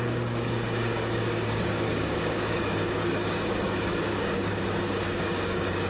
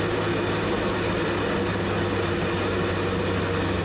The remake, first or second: first